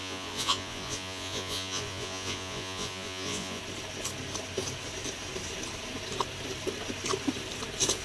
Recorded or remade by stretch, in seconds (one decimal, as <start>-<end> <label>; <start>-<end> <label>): 0.0-3.6 remade; 3.6-8.0 recorded